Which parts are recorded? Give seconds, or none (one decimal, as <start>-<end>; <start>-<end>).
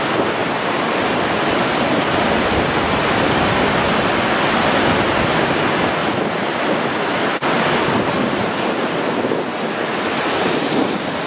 0.0-0.4; 1.2-1.9; 4.1-11.3